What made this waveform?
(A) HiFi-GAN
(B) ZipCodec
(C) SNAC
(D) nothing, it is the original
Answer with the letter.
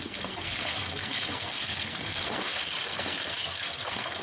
C